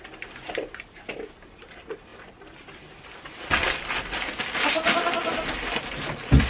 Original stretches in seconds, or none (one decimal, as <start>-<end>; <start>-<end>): 0.0-6.5